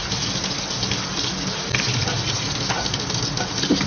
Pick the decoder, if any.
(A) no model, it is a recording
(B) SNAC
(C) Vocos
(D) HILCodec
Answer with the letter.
A